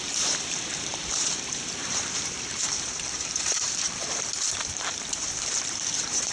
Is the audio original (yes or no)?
no